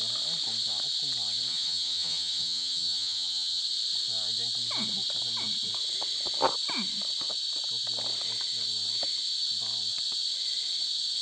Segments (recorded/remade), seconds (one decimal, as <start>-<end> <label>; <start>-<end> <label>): 0.0-1.5 recorded; 1.5-3.6 remade; 3.6-11.2 recorded